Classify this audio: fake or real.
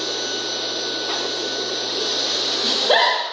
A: real